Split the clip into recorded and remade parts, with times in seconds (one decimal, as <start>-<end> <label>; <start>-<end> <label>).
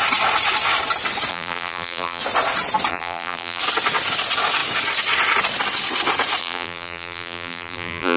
0.0-1.3 recorded; 1.3-2.2 remade; 2.2-2.9 recorded; 2.9-3.6 remade; 3.6-6.4 recorded; 6.4-8.2 remade